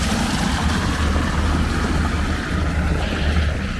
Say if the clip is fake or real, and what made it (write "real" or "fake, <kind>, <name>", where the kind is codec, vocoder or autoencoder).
real